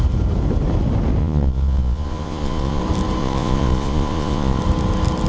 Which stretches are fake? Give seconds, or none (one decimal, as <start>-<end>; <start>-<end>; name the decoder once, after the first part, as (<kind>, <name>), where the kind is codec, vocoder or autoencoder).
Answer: 1.2-2.8 (vocoder, Vocos); 3.2-4.6